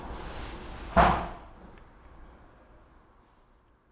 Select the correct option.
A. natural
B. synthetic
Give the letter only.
A